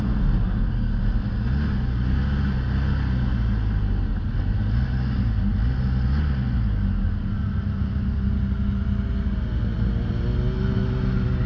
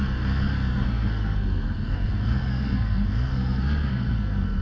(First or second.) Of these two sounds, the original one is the first